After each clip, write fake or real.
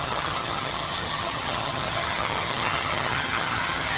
fake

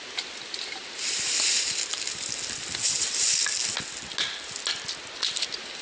real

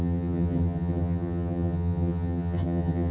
fake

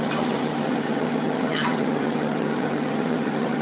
fake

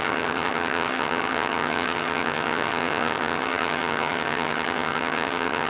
fake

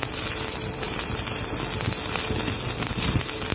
real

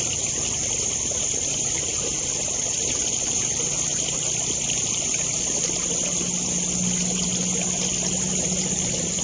real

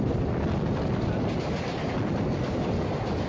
real